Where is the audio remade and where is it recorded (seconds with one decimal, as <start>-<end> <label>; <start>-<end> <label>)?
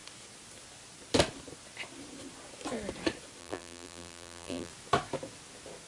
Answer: 0.0-3.4 recorded; 3.4-4.7 remade; 4.7-5.9 recorded